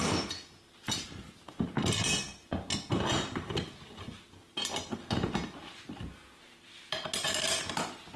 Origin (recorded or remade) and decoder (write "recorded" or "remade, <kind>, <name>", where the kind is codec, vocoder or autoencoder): recorded